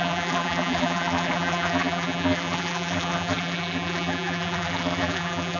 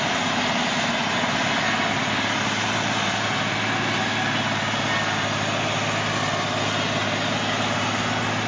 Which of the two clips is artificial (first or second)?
first